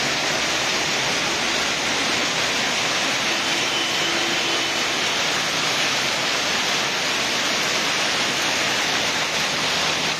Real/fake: real